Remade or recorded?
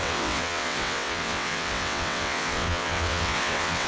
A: remade